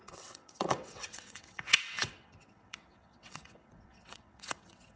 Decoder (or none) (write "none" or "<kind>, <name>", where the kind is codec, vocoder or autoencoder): vocoder, WaveNeXt